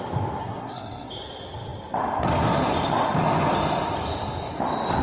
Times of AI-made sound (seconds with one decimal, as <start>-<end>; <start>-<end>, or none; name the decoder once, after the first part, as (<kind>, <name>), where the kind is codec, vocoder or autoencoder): 0.4-1.1 (codec, SNAC)